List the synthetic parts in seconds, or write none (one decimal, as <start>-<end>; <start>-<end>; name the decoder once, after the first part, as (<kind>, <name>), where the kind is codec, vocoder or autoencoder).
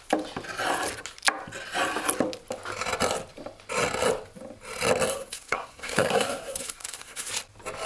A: 5.1-7.3 (codec, SNAC)